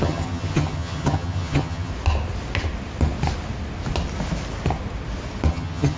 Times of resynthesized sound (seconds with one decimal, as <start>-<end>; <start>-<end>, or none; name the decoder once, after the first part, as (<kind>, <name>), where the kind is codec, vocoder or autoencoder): 0.0-1.9 (vocoder, HiFi-GAN); 5.5-6.0